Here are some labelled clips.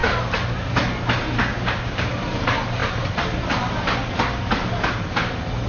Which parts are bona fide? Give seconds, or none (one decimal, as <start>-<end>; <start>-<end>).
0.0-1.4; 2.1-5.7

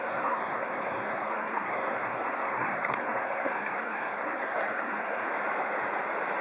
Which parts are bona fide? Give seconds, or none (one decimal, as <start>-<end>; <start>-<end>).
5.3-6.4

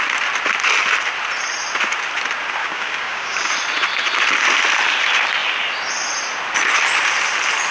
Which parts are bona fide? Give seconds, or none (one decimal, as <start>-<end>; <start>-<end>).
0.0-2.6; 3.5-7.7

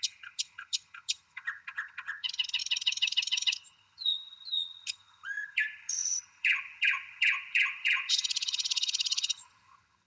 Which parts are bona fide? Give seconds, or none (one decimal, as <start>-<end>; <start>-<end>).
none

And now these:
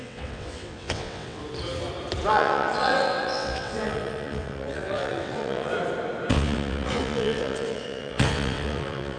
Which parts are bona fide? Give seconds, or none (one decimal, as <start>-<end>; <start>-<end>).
1.4-2.3; 5.7-6.3

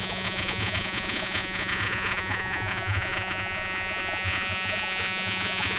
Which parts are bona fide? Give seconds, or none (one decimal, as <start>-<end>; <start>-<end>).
none

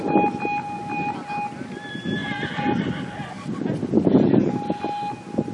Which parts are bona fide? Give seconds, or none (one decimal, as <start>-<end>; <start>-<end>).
0.0-5.5

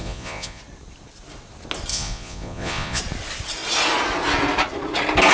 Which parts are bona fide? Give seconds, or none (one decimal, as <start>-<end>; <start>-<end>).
0.6-1.9; 3.0-5.3